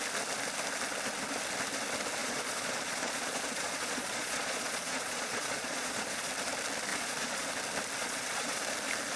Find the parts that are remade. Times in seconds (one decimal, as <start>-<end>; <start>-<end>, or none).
2.2-6.3; 6.9-7.5; 8.0-8.6